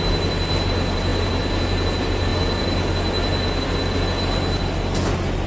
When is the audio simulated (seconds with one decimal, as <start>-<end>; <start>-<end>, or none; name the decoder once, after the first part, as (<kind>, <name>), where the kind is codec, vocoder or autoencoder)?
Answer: none